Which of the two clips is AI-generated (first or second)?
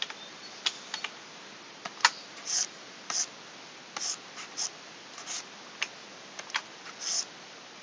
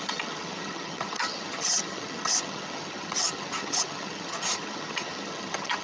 second